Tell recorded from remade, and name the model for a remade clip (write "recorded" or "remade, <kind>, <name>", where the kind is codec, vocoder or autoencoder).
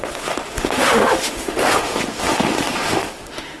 remade, autoencoder, DAC-VAE